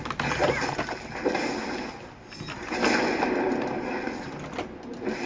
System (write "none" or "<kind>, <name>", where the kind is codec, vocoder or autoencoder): none